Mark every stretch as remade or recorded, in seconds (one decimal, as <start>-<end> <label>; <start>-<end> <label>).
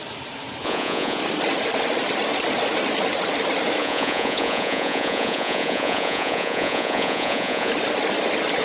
0.0-0.6 recorded; 0.6-1.2 remade; 1.2-3.8 recorded; 3.8-7.7 remade; 7.7-8.6 recorded